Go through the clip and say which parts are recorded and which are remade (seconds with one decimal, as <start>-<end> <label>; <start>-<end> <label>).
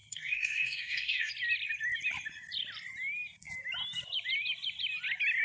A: 0.0-1.3 remade; 1.3-5.4 recorded